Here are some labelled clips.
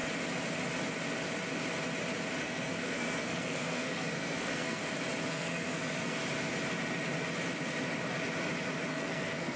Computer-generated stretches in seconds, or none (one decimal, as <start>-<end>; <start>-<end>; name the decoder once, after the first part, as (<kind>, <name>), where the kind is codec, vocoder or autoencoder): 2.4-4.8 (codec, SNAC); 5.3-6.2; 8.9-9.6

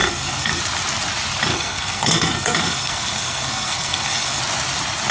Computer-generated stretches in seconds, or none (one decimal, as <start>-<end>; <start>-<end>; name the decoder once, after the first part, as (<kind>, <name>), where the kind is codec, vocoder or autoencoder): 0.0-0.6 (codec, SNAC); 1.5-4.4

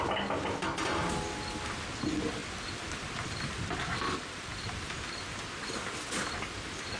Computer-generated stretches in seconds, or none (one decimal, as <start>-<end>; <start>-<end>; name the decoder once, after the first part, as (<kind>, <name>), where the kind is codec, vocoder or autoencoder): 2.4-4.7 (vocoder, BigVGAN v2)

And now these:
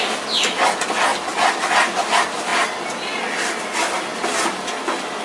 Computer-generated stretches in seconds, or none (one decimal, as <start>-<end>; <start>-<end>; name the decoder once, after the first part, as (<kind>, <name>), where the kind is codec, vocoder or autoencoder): none

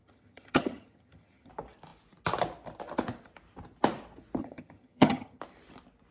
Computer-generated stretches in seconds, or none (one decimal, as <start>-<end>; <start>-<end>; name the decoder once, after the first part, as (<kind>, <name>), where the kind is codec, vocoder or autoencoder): 0.0-1.5 (vocoder, HiFi-GAN); 4.4-5.4